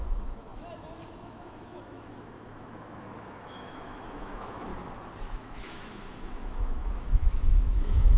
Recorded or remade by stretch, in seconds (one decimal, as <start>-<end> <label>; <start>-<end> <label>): 0.0-0.5 remade; 0.5-1.1 recorded; 1.1-4.7 remade; 4.7-5.2 recorded; 5.2-8.2 remade